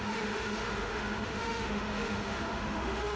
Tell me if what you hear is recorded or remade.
remade